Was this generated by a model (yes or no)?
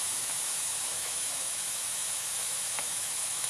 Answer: yes